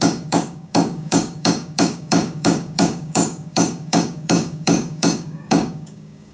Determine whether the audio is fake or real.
fake